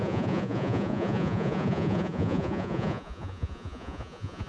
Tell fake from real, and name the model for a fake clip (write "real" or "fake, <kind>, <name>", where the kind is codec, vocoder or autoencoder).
fake, vocoder, Vocos